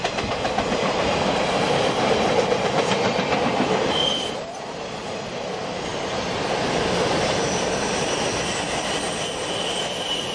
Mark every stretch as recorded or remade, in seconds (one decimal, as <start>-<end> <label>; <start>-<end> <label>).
0.0-10.3 recorded